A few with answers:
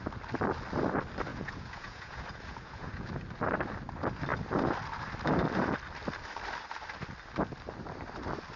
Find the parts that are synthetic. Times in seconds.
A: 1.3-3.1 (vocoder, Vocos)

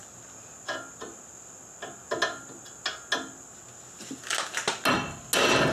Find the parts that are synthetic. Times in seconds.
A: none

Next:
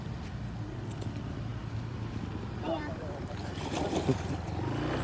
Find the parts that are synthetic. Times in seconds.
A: 1.5-4.5 (vocoder, BigVGAN v2)